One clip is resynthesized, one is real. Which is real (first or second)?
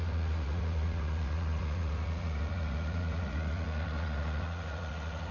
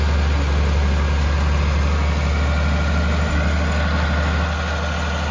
second